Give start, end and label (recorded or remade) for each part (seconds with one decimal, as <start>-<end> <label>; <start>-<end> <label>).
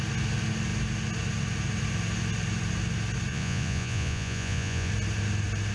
0.0-3.3 recorded; 3.3-4.9 remade; 4.9-5.7 recorded